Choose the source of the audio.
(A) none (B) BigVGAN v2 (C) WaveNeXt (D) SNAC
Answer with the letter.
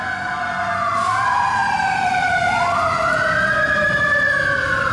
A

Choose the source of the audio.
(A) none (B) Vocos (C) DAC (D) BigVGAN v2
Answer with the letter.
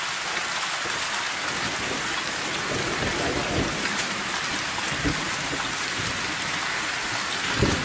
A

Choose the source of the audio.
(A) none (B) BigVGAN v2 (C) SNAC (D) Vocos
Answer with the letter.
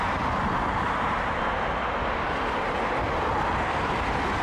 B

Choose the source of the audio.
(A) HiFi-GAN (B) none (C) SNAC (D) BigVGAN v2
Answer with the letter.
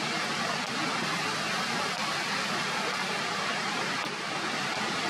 B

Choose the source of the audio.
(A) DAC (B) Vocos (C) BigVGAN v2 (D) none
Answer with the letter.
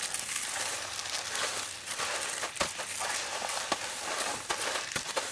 D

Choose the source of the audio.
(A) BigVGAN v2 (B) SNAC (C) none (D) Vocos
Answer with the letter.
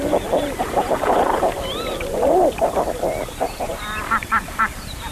A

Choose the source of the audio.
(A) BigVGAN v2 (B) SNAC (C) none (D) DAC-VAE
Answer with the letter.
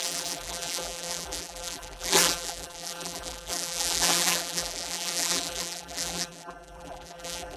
A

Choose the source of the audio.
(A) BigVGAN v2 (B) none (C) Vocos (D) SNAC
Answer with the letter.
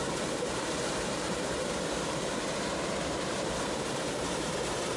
A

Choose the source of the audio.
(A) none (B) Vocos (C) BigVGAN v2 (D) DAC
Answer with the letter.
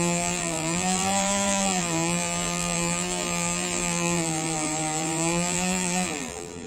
C